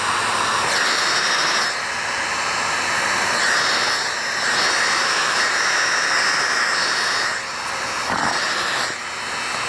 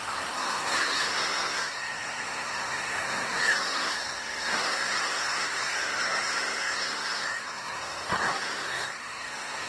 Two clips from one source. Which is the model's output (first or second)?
second